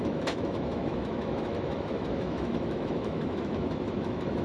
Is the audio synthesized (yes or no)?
yes